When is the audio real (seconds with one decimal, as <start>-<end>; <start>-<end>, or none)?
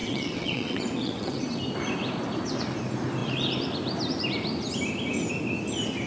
1.6-6.1